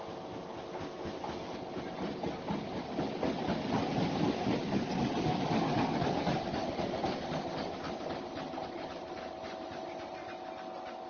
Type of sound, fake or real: real